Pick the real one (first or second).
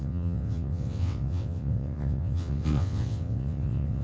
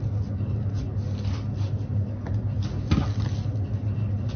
second